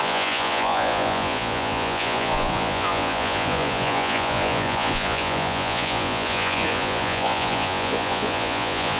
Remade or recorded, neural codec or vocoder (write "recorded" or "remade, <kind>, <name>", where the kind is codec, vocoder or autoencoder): remade, vocoder, Vocos